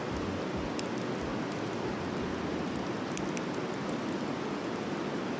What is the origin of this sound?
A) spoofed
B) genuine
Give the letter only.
B